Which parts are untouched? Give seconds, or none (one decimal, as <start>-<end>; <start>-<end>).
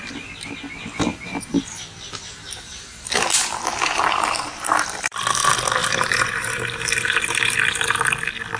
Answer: 0.0-1.1; 5.2-5.8; 8.0-8.6